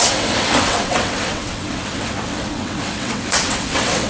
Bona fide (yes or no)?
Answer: no